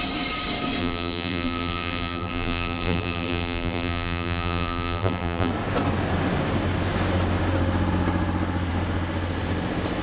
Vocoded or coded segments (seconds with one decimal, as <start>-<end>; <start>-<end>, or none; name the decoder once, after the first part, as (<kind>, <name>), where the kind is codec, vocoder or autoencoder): 0.8-5.5 (vocoder, BigVGAN v2)